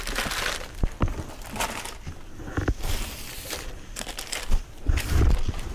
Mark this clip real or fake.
real